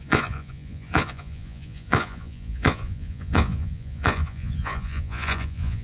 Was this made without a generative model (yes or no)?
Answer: no